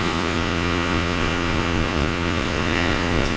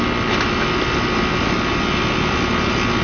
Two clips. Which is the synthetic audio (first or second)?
first